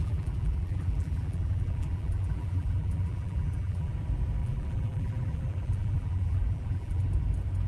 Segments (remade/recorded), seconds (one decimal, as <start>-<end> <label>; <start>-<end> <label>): 0.0-3.9 remade; 3.9-4.4 recorded; 4.4-7.0 remade; 7.0-7.7 recorded